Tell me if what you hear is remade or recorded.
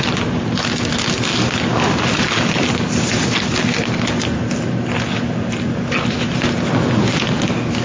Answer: recorded